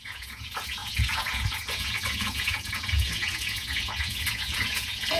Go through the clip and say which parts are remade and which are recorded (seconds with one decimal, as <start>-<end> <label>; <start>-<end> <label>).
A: 0.0-5.2 remade

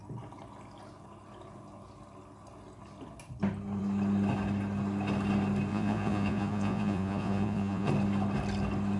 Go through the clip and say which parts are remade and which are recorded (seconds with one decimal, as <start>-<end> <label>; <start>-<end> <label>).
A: 0.0-5.7 recorded; 5.7-7.9 remade; 7.9-9.0 recorded

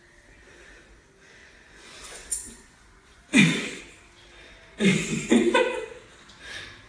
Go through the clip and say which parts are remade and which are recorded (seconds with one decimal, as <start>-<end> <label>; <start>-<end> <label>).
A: 0.0-1.4 recorded; 1.4-3.8 remade; 3.8-4.9 recorded; 4.9-5.6 remade; 5.6-6.9 recorded

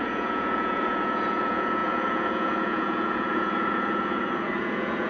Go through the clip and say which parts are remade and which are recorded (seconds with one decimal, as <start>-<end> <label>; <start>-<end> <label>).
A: 0.0-5.1 remade

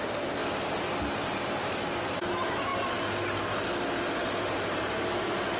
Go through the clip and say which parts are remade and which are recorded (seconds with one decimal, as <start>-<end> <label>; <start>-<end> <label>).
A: 0.0-5.6 recorded

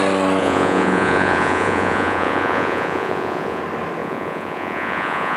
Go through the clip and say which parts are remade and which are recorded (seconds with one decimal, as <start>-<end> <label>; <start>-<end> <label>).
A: 0.0-0.4 recorded; 0.4-3.6 remade; 3.6-4.0 recorded; 4.0-5.4 remade

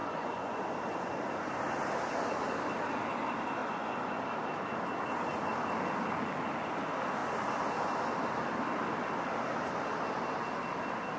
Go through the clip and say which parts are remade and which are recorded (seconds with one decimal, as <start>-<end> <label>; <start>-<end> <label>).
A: 0.0-0.6 remade; 0.6-3.6 recorded; 3.6-4.2 remade; 4.2-11.2 recorded